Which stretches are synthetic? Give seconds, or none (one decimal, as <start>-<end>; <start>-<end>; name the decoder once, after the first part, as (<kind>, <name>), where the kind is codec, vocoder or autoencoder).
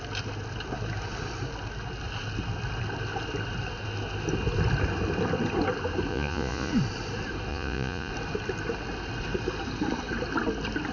6.1-6.7 (vocoder, Vocos); 7.5-8.1